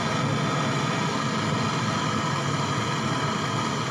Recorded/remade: recorded